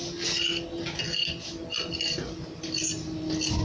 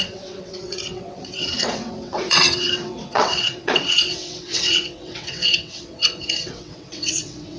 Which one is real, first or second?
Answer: first